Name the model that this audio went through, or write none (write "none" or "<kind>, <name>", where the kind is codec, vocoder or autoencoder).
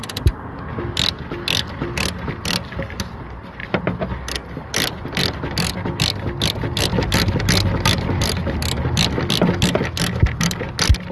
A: none